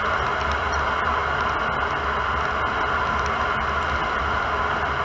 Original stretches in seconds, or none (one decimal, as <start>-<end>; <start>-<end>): 0.0-5.0